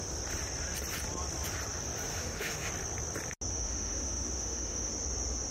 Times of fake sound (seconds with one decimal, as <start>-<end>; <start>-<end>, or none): 2.1-2.7; 3.5-4.9